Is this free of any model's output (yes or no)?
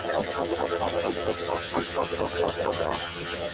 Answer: no